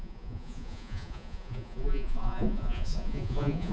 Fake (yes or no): yes